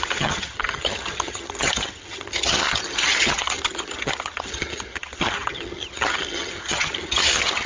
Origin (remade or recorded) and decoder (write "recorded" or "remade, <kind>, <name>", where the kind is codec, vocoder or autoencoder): remade, vocoder, HiFi-GAN